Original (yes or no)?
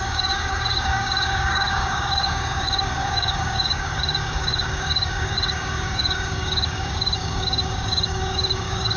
no